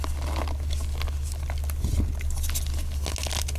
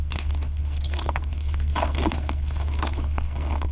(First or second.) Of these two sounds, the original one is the first